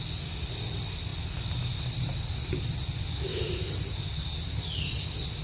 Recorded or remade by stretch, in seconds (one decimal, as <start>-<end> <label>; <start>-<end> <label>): 0.0-5.4 recorded